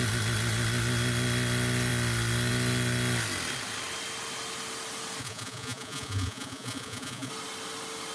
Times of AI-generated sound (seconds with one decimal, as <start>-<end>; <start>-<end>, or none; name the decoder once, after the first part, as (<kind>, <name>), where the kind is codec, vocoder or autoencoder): 5.2-7.3 (vocoder, Vocos)